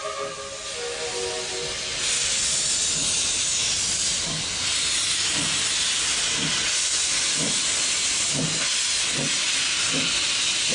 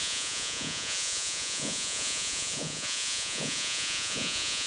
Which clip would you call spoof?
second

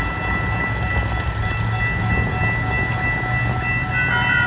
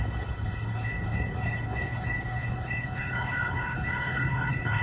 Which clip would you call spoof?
second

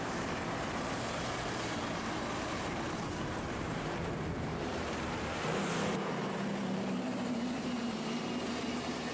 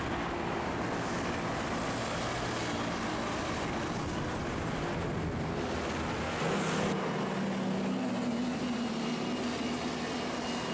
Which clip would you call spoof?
first